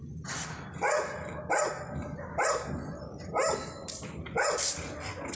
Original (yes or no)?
yes